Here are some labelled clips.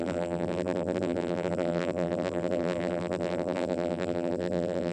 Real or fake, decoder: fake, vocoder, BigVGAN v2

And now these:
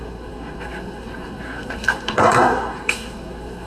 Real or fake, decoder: fake, codec, SNAC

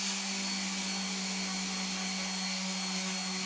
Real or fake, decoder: real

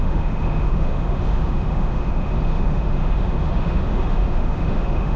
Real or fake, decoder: fake, autoencoder, DAC-VAE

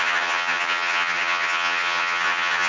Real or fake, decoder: fake, vocoder, HiFi-GAN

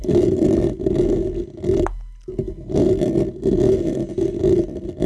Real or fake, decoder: real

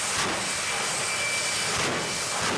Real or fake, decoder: real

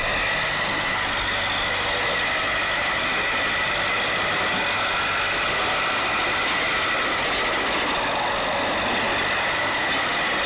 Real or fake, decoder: real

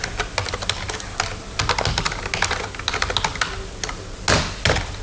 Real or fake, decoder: real